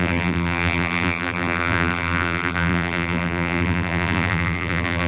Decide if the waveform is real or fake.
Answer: fake